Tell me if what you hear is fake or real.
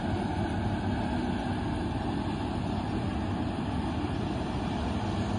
real